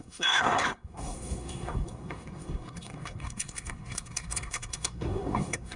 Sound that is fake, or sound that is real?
fake